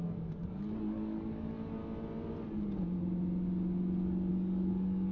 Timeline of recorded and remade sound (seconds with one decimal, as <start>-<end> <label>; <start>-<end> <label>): 0.0-1.8 remade; 1.8-4.3 recorded; 4.3-5.1 remade